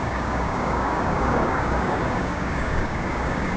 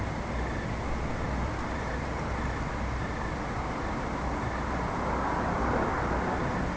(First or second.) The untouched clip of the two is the second